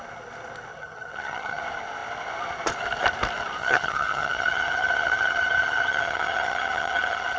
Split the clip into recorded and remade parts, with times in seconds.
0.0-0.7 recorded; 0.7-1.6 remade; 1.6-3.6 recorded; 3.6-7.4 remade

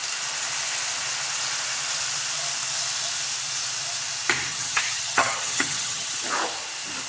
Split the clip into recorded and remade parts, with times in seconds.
0.0-4.5 recorded; 4.5-6.1 remade; 6.1-7.1 recorded

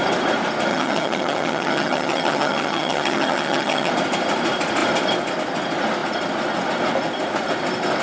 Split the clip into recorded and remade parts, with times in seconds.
0.0-0.7 recorded; 0.7-3.9 remade; 3.9-8.0 recorded

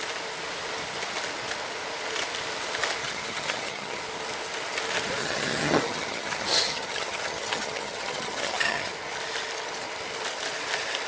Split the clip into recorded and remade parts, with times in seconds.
0.0-3.0 recorded; 3.0-4.0 remade; 4.0-5.2 recorded; 5.2-8.9 remade; 8.9-11.1 recorded

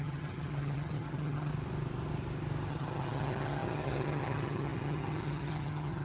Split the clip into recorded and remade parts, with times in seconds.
0.0-1.5 remade; 1.5-2.7 recorded; 2.7-6.0 remade

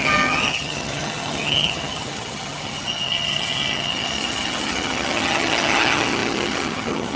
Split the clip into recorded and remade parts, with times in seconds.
0.0-7.2 remade

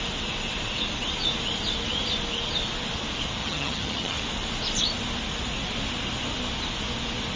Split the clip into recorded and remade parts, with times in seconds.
0.0-3.4 recorded; 3.4-4.2 remade; 4.2-7.4 recorded